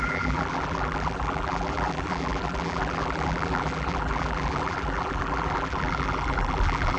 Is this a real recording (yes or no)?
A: no